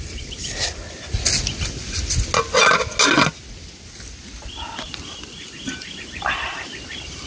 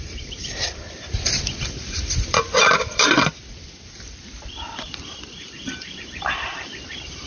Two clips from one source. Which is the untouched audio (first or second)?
first